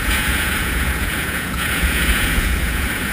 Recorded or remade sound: remade